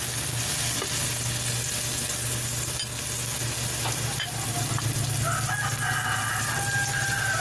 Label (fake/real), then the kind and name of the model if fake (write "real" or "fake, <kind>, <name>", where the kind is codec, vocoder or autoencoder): real